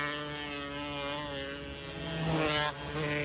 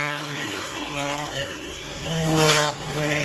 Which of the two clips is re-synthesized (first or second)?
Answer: second